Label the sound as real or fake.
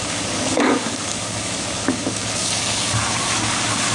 fake